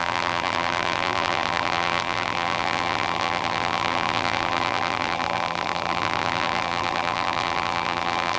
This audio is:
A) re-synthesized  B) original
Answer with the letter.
A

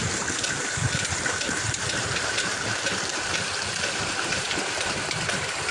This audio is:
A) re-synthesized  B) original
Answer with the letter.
A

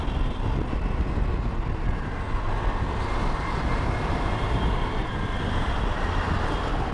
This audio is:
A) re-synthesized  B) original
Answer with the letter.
B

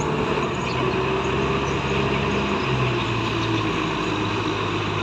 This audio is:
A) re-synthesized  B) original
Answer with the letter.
B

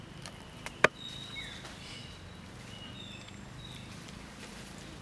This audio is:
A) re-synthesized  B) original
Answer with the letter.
A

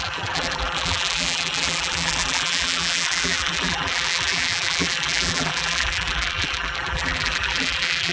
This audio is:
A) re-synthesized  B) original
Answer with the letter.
A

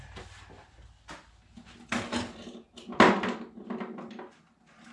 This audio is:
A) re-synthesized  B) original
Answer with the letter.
B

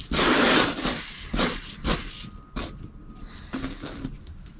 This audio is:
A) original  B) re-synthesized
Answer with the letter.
A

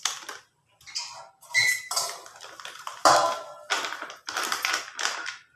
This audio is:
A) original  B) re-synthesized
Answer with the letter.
B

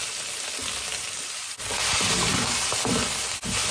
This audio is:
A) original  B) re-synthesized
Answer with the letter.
A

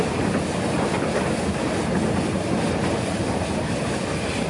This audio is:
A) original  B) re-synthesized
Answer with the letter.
A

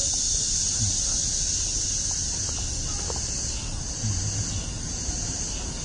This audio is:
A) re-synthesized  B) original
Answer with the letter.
B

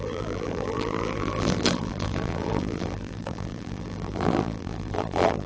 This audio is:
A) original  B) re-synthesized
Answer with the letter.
B